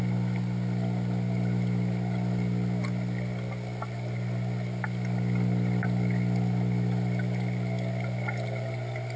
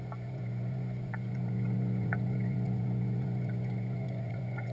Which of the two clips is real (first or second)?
first